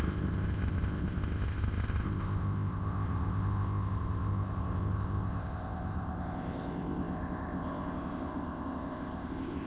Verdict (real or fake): fake